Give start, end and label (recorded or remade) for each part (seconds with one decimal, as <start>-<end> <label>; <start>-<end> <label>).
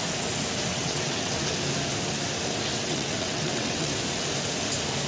0.0-0.7 recorded; 0.7-1.4 remade; 1.4-2.8 recorded; 2.8-3.9 remade; 3.9-5.1 recorded